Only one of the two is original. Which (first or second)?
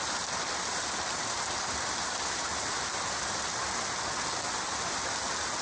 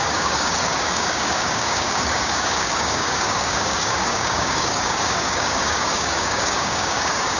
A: first